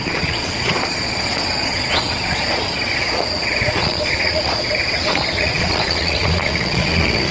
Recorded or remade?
remade